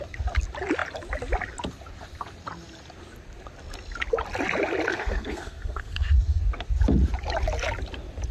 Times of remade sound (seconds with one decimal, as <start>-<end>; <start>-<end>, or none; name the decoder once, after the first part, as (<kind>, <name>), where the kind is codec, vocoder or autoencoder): 4.9-6.4 (codec, SNAC)